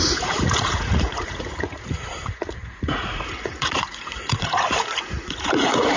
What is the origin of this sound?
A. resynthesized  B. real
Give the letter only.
A